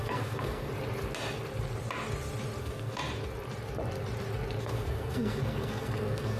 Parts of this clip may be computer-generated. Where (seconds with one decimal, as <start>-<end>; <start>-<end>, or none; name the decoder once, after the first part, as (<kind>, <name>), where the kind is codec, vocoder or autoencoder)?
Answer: 0.0-0.7 (codec, SNAC); 2.6-3.0; 4.6-6.4